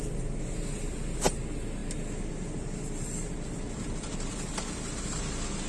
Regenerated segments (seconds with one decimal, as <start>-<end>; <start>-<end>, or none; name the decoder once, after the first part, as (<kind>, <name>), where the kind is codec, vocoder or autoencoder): 1.8-5.2 (vocoder, BigVGAN v2)